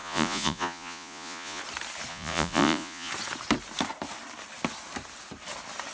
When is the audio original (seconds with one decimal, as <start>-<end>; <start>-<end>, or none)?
1.6-2.1; 3.1-5.9